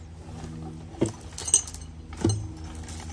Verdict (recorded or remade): recorded